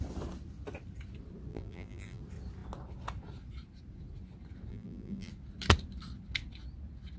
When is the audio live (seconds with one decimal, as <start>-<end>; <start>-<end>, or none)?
0.0-1.5; 2.2-4.7; 5.3-7.2